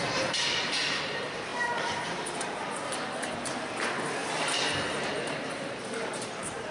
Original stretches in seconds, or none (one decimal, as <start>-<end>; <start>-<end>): 4.2-5.0